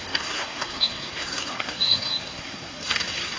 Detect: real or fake fake